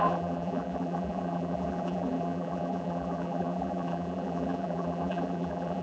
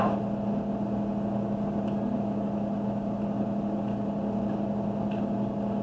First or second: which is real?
second